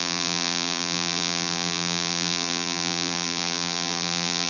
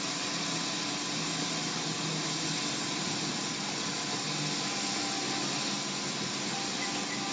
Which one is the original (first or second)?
second